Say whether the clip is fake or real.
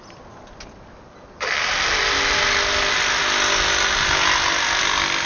real